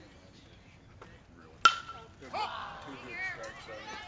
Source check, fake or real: real